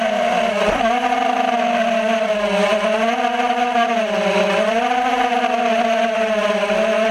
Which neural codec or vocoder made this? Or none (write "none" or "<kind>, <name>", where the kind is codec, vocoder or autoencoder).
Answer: none